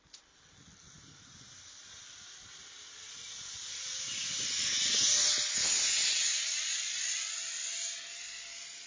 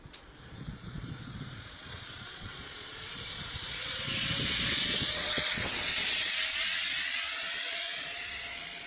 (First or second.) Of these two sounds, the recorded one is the first